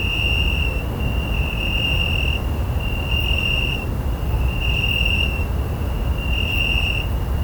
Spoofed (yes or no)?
no